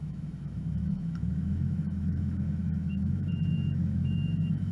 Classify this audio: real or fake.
fake